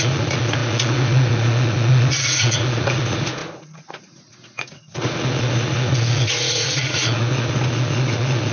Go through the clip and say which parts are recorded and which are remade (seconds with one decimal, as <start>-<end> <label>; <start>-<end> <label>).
0.0-8.5 remade